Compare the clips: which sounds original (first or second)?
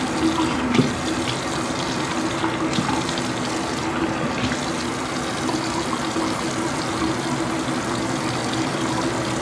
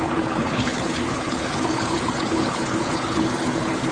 first